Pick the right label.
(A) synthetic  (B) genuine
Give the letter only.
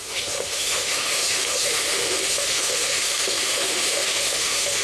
A